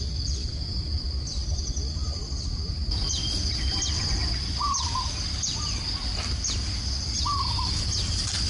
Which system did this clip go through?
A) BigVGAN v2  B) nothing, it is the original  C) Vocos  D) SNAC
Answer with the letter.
B